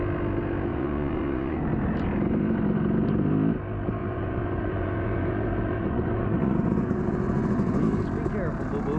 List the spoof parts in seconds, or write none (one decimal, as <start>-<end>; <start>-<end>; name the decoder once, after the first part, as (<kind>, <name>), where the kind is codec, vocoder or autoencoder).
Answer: 0.7-1.6 (vocoder, Vocos); 4.0-7.8